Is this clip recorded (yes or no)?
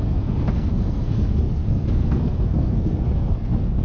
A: no